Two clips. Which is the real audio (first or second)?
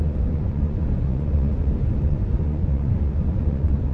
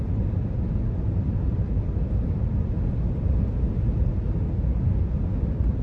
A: second